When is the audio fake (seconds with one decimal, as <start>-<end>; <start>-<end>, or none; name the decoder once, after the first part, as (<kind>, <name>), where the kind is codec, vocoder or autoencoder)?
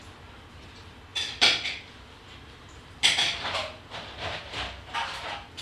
1.1-4.5 (vocoder, BigVGAN v2); 5.0-5.6